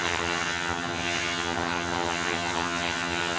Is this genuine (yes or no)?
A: no